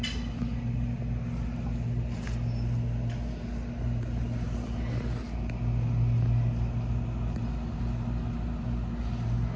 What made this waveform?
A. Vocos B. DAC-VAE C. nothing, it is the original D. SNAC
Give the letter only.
C